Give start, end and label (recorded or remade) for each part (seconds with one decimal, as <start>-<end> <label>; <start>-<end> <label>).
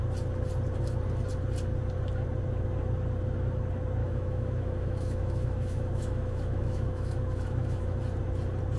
0.0-4.0 recorded; 4.0-8.0 remade; 8.0-8.8 recorded